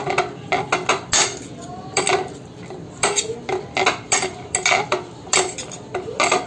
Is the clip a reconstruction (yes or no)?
no